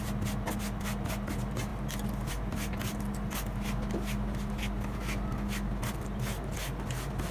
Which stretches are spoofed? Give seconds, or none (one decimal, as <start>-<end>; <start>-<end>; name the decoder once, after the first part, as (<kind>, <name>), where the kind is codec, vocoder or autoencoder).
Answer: none